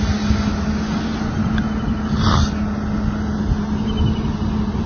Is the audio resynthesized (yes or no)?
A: no